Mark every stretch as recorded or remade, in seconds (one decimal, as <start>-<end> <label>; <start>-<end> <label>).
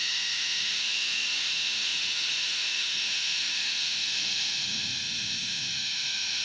0.0-6.4 remade